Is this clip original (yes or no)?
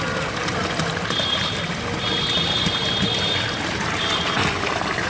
yes